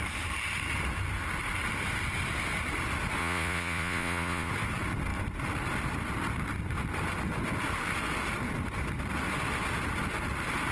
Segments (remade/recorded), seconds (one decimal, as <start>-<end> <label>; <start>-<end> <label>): 0.0-3.2 recorded; 3.2-4.5 remade; 4.5-10.7 recorded